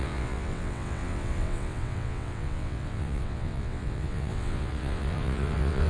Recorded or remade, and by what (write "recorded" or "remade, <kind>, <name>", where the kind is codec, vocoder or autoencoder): remade, vocoder, WaveNeXt